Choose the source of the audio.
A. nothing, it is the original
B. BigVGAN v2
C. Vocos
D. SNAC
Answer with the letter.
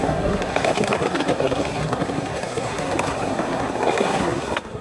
D